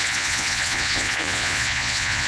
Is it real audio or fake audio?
fake